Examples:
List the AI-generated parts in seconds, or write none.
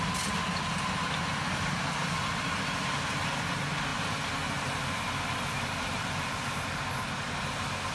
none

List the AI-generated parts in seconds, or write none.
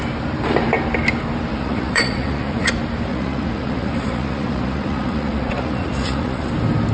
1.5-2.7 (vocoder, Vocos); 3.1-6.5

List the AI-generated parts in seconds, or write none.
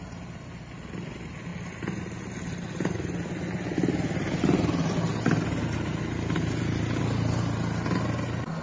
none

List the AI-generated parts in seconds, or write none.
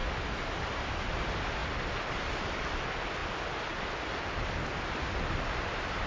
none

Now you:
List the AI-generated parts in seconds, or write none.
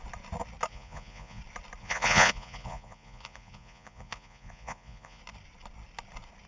0.7-1.4 (vocoder, Vocos); 1.8-5.2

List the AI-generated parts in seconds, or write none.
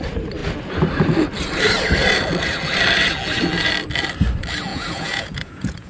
4.7-5.9 (vocoder, Vocos)